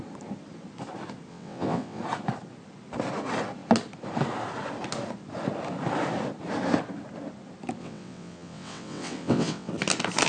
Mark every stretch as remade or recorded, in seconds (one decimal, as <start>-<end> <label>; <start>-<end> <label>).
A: 0.0-1.3 recorded; 1.3-2.0 remade; 2.0-7.8 recorded; 7.8-9.7 remade; 9.7-10.3 recorded